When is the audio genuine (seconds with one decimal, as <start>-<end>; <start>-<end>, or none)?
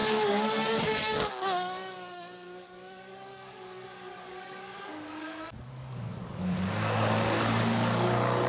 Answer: none